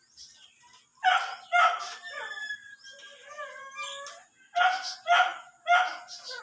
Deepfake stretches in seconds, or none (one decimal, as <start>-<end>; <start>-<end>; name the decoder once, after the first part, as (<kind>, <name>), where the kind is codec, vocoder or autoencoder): none